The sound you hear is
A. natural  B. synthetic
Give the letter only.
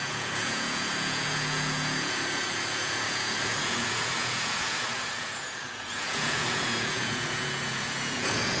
B